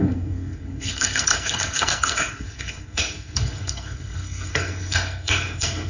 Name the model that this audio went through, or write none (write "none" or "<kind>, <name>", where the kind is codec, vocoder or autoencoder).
codec, SNAC